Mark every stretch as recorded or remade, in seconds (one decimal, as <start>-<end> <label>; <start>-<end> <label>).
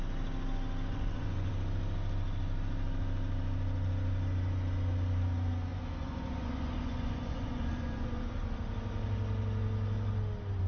0.0-0.9 recorded; 0.9-1.5 remade; 1.5-5.7 recorded; 5.7-8.2 remade; 8.2-10.7 recorded